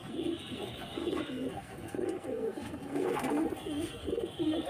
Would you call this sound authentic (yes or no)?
no